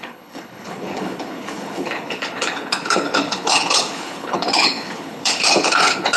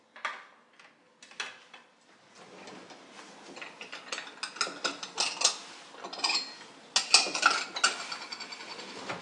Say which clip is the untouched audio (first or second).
second